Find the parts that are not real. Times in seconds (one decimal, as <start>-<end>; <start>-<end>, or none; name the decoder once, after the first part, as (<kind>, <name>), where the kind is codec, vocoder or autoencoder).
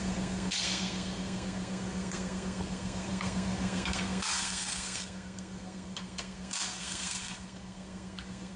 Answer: 0.0-8.6 (codec, SNAC)